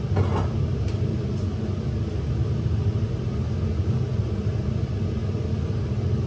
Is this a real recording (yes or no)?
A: yes